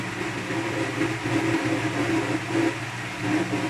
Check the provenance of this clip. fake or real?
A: real